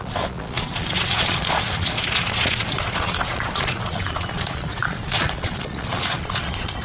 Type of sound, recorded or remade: remade